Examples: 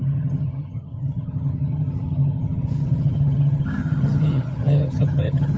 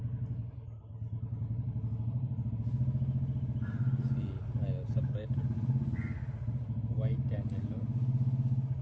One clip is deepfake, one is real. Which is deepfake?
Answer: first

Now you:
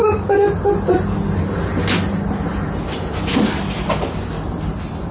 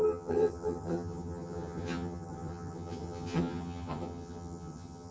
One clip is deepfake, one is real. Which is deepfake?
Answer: second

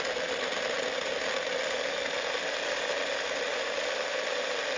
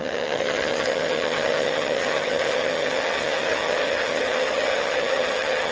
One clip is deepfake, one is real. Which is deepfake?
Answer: second